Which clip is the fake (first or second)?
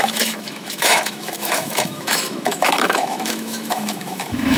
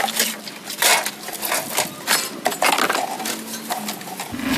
first